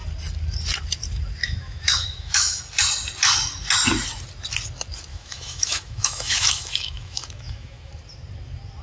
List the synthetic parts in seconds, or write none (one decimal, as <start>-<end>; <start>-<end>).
1.4-2.6; 5.1-7.9